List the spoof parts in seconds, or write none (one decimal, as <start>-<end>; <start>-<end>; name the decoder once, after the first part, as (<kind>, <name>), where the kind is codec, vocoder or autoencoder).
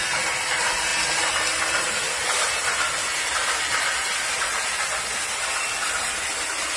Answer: none